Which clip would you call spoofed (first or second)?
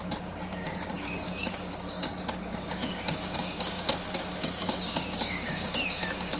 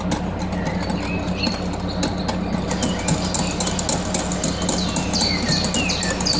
first